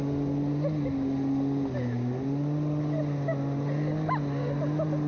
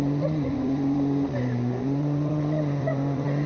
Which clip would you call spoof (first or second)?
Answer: second